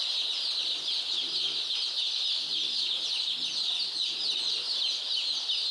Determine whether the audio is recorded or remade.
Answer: recorded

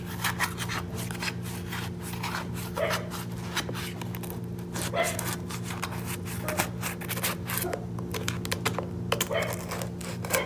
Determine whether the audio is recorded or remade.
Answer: recorded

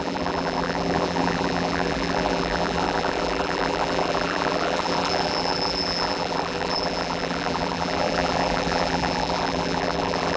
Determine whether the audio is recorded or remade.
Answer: remade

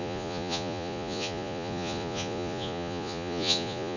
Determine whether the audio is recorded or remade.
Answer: remade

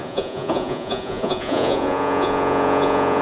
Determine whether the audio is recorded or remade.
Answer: remade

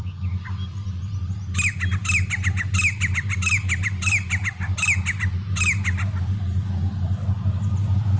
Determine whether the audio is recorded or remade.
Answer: recorded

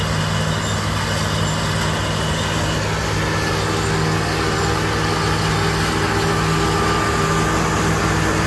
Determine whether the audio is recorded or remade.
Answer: recorded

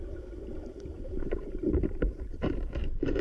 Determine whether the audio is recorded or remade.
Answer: remade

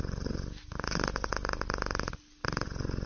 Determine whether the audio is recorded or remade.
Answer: recorded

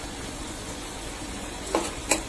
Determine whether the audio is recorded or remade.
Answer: remade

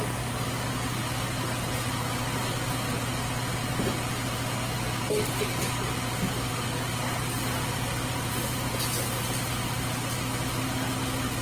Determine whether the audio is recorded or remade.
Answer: recorded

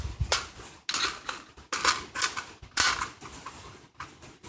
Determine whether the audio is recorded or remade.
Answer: recorded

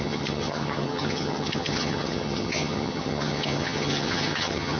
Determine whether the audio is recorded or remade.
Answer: remade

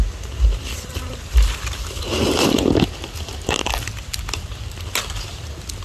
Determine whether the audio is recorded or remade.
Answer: recorded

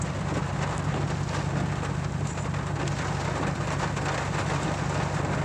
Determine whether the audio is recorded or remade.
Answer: recorded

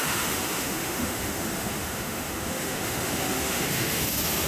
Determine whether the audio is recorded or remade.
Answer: remade